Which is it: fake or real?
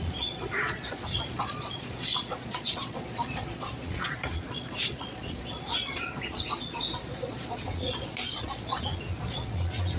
fake